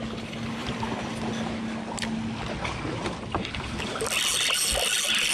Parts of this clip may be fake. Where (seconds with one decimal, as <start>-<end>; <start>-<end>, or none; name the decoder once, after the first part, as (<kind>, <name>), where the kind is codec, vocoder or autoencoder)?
none